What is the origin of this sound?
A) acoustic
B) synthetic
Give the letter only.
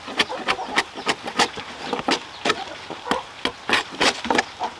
A